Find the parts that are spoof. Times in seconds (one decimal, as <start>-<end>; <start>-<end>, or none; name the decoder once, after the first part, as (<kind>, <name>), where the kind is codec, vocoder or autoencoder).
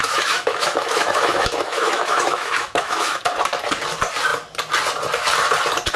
0.0-3.2 (autoencoder, DAC-VAE)